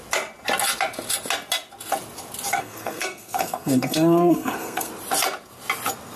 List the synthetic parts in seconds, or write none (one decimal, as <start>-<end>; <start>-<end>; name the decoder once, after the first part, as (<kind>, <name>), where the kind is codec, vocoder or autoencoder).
2.5-4.9 (codec, SNAC)

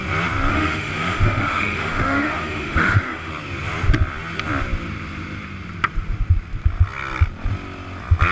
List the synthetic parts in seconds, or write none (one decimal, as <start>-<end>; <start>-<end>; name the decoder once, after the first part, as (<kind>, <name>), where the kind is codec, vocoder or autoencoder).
0.5-3.3 (autoencoder, DAC-VAE)

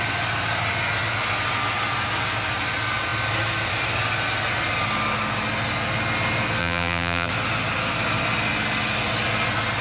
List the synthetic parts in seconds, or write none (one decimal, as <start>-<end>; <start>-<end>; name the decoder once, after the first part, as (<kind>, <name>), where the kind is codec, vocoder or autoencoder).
6.6-7.3 (vocoder, BigVGAN v2)

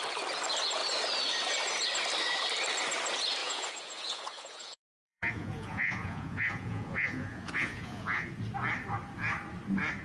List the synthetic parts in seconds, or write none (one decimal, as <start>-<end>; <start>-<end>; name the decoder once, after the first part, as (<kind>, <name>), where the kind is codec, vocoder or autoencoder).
3.4-8.3 (vocoder, Vocos)

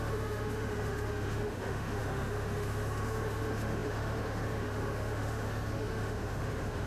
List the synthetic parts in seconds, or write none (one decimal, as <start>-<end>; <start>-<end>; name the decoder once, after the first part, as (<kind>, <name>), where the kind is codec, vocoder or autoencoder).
0.0-6.9 (autoencoder, DAC-VAE)